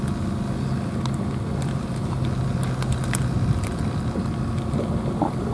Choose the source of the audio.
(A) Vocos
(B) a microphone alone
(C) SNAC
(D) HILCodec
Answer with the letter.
B